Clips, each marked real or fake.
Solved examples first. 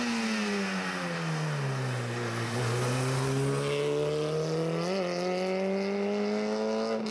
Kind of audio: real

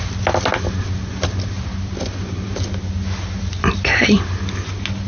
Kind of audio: real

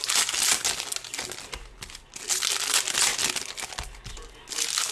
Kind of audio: real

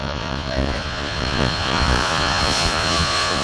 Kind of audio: fake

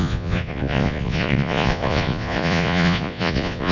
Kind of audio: fake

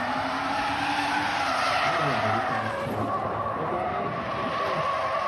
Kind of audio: real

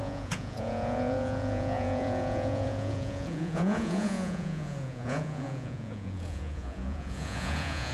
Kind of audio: fake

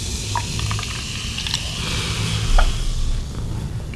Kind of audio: real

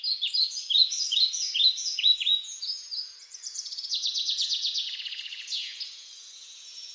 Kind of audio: fake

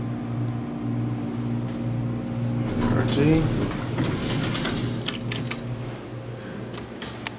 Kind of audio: real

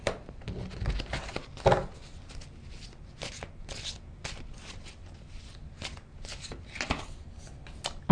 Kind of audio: real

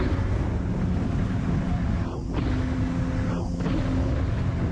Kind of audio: real